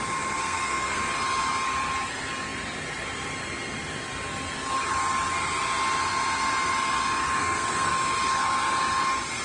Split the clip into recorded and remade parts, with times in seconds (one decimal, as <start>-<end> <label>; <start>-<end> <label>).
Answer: 0.0-0.4 recorded; 0.4-1.0 remade; 1.0-7.4 recorded; 7.4-7.9 remade; 7.9-9.4 recorded